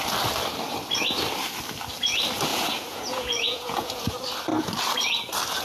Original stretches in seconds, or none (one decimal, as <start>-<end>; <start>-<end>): 0.0-2.5; 4.0-5.6